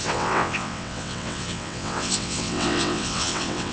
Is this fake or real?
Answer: fake